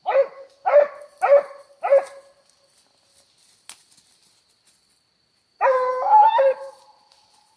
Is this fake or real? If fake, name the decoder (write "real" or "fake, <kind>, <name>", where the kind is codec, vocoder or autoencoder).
real